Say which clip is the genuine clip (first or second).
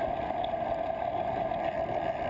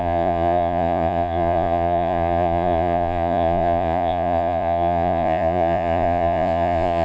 first